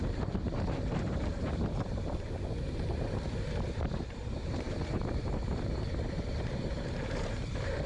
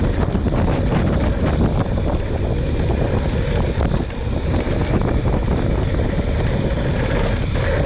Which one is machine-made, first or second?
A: first